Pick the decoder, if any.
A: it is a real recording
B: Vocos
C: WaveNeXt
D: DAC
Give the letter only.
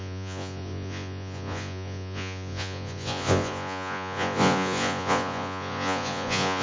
B